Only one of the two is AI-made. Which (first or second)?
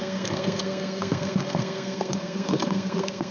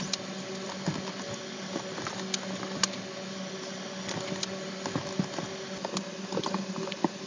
first